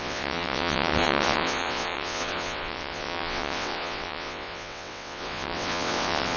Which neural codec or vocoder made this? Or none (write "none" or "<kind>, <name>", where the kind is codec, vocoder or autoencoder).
vocoder, WaveNeXt